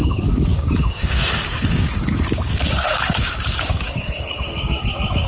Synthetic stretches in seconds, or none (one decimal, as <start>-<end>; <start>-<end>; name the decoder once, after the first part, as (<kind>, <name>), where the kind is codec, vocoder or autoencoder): 0.0-5.3 (codec, DAC)